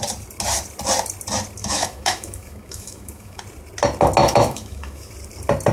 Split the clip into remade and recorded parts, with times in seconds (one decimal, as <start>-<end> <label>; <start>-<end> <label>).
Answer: 0.0-1.6 recorded; 1.6-3.4 remade; 3.4-4.2 recorded; 4.2-5.1 remade; 5.1-5.7 recorded